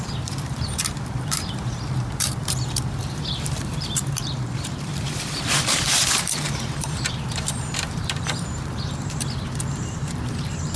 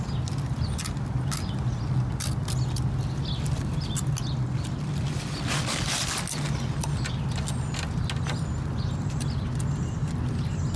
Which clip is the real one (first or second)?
second